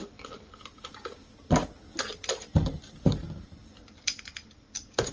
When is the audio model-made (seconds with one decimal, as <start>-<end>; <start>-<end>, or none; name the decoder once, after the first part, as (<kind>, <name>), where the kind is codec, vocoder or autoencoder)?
none